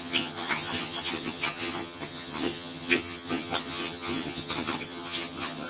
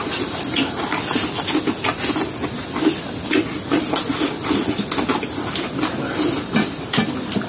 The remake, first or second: first